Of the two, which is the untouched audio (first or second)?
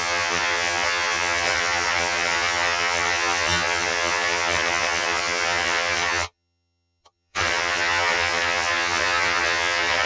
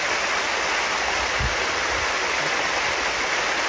second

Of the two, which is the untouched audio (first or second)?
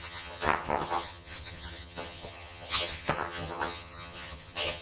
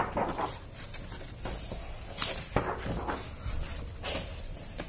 second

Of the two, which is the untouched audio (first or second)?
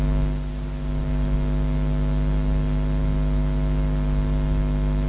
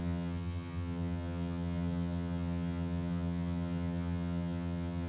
first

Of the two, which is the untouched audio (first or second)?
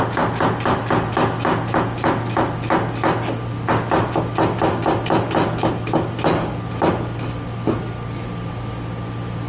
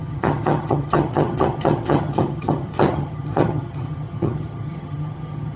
first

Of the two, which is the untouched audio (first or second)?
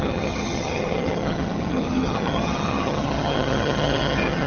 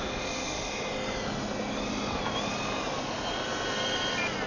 second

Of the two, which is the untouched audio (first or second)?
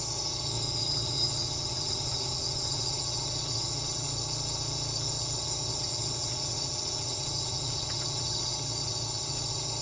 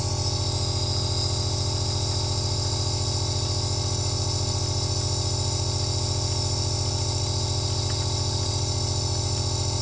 second